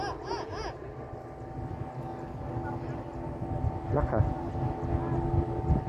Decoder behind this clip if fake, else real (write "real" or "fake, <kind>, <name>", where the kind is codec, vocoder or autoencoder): real